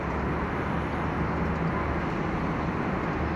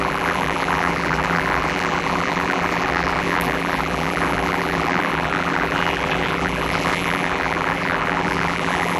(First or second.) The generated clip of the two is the second